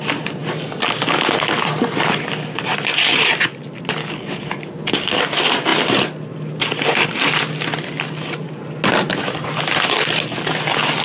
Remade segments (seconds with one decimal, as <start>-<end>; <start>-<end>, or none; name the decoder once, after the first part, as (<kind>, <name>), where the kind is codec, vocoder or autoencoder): 4.0-5.2 (codec, DAC)